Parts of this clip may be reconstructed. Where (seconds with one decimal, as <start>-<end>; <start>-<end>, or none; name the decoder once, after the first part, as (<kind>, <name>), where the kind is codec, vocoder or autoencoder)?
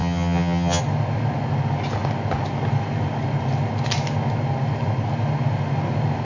0.0-0.8 (vocoder, HiFi-GAN)